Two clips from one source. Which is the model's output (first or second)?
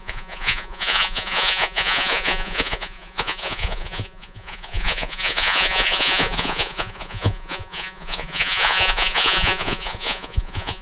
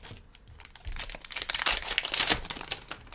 first